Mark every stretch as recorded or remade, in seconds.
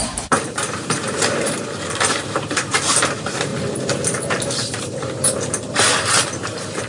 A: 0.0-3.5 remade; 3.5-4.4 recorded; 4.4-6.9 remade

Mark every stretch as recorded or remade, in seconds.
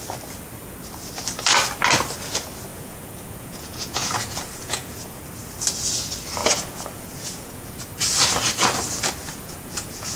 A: 0.0-2.7 recorded; 2.7-5.2 remade; 5.2-6.4 recorded; 6.4-7.8 remade; 7.8-9.2 recorded; 9.2-10.2 remade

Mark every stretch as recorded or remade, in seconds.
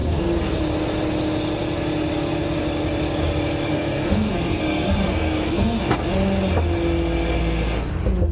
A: 0.0-0.6 remade; 0.6-3.7 recorded; 3.7-6.0 remade; 6.0-7.4 recorded; 7.4-7.9 remade; 7.9-8.3 recorded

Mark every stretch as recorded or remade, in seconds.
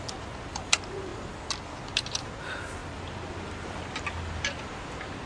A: 0.0-5.3 recorded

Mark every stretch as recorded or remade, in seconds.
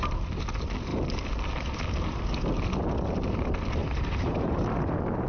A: 0.0-3.8 recorded; 3.8-5.3 remade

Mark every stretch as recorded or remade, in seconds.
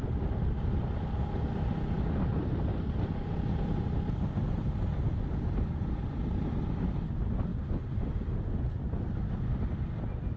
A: 0.0-10.4 recorded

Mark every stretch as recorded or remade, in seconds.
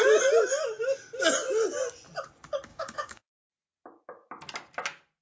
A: 0.0-2.7 recorded; 2.7-3.5 remade; 3.5-5.2 recorded